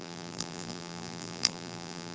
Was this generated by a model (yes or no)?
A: yes